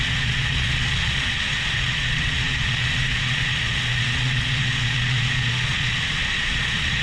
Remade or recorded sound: remade